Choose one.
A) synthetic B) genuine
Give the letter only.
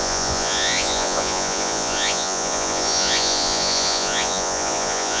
A